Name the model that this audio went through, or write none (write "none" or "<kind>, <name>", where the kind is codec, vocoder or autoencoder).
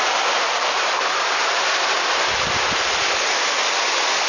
none